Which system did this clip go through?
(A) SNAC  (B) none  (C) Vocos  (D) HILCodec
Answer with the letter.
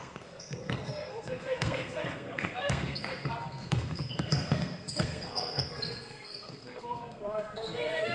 A